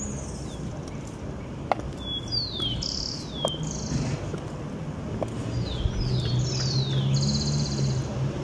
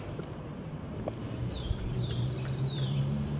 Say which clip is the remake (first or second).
second